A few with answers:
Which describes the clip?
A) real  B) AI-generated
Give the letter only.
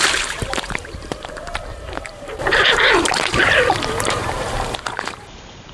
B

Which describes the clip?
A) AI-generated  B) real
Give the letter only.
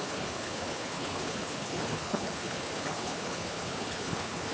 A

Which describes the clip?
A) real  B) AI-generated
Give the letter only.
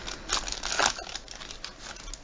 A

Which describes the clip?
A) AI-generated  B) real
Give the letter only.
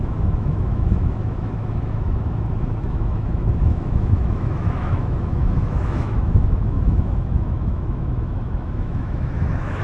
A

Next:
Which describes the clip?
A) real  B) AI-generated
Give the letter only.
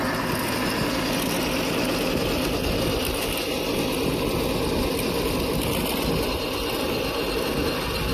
A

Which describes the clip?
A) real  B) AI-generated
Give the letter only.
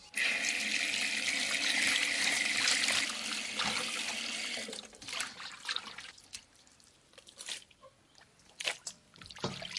A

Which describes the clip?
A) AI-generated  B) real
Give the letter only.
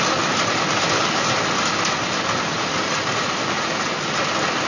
B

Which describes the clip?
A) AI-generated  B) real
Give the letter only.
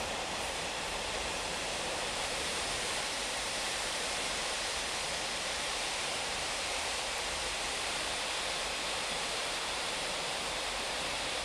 A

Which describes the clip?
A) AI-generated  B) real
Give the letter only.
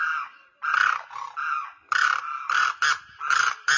A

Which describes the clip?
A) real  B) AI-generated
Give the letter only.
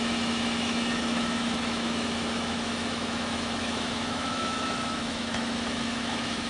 B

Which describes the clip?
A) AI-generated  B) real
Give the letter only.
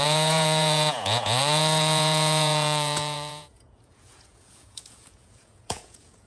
A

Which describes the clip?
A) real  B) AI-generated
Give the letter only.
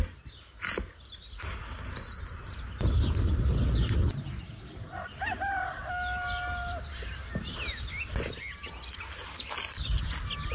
A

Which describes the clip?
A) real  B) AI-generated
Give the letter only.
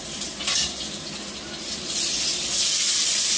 A